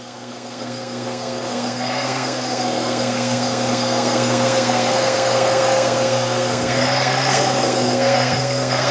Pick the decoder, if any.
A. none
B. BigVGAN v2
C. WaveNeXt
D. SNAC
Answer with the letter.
D